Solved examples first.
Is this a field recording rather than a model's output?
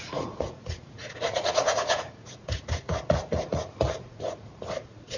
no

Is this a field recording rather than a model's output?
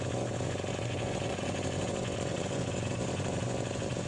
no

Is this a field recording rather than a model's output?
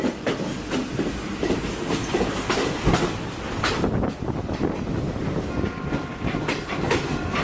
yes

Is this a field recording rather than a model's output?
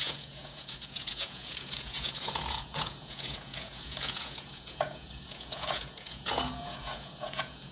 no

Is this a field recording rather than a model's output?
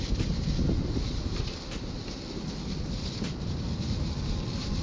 yes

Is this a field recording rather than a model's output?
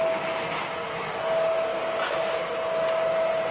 yes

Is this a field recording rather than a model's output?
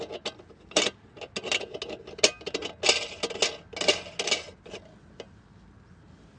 yes